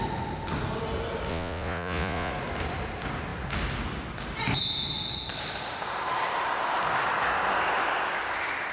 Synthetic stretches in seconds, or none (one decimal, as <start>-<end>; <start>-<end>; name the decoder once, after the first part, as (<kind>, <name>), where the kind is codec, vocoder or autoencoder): 1.3-2.3 (vocoder, Vocos)